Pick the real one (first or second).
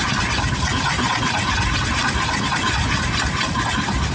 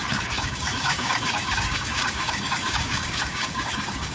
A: first